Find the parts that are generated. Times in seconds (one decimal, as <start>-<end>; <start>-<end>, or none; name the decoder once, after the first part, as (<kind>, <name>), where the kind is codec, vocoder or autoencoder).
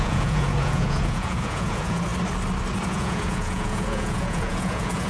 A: 0.0-2.1 (vocoder, Vocos); 2.9-5.1